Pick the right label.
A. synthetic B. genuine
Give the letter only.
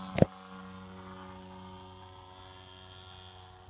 B